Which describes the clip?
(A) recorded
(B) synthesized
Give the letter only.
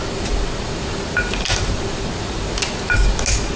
A